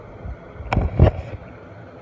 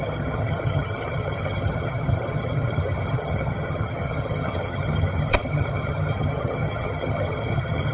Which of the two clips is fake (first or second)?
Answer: second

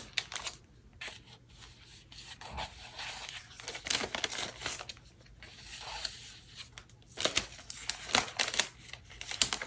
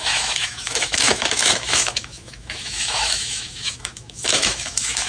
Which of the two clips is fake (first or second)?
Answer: second